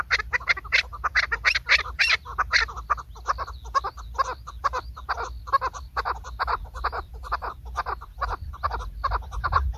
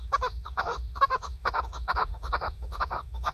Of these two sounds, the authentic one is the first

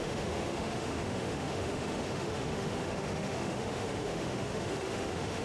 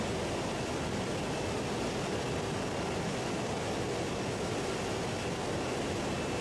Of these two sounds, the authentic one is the second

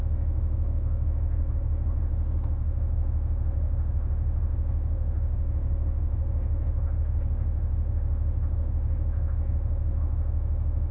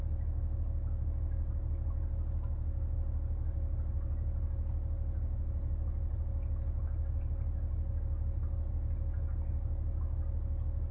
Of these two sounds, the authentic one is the second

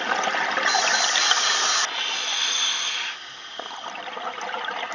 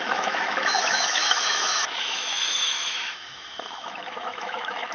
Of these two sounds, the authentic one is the first